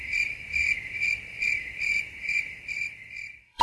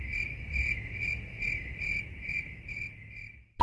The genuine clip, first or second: second